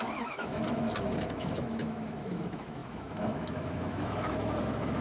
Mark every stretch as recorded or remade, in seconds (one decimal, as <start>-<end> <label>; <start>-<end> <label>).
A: 0.0-5.0 remade